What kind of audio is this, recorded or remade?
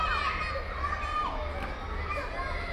recorded